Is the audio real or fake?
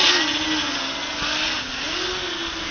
real